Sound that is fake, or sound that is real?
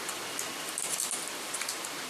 real